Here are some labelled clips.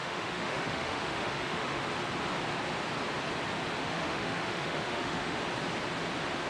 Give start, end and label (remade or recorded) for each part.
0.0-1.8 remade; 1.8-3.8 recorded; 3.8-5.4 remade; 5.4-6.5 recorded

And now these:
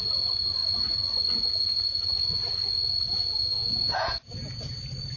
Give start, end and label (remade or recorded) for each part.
0.0-3.5 recorded; 3.5-4.8 remade; 4.8-5.2 recorded